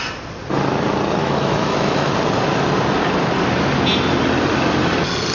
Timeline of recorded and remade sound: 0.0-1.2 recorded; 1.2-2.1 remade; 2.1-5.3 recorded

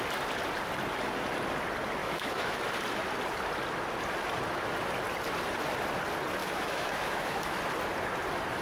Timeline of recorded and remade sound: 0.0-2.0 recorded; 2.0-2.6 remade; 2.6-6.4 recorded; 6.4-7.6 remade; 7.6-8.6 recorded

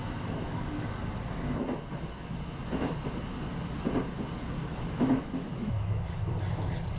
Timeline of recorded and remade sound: 0.0-0.6 remade; 0.6-4.7 recorded; 4.7-6.1 remade; 6.1-7.0 recorded

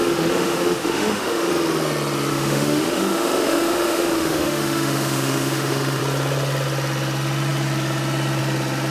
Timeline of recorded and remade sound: 0.0-1.5 remade; 1.5-2.3 recorded; 2.3-6.0 remade; 6.0-8.9 recorded

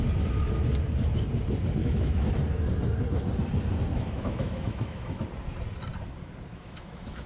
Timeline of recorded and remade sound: 0.0-1.8 recorded; 1.8-2.3 remade; 2.3-3.9 recorded; 3.9-5.2 remade; 5.2-6.5 recorded; 6.5-7.3 remade

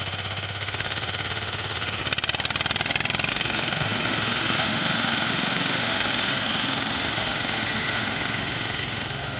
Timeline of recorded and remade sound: 0.0-2.0 remade; 2.0-3.3 recorded; 3.3-9.4 remade